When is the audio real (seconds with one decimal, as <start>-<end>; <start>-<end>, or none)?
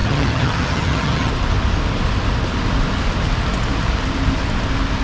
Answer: 1.3-5.0